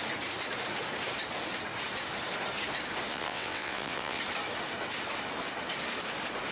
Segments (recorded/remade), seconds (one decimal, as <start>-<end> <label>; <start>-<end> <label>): 0.0-3.1 recorded; 3.1-4.2 remade; 4.2-6.5 recorded